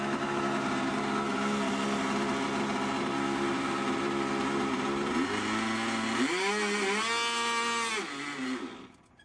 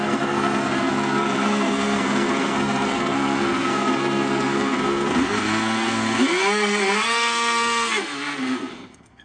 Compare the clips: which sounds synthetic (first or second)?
second